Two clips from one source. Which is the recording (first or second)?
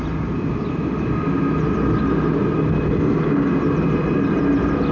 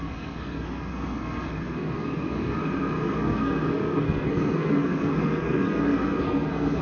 first